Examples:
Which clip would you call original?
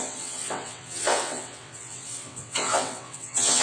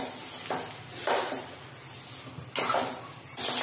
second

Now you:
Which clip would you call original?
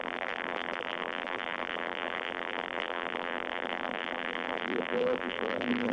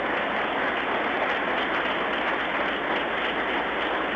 second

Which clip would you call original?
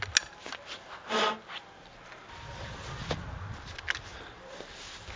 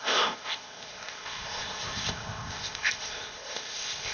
first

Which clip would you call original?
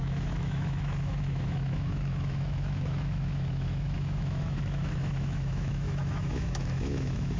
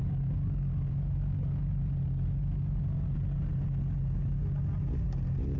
second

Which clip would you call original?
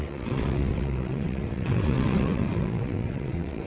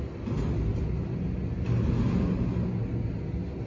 second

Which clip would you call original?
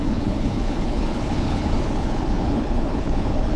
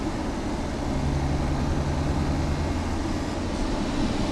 second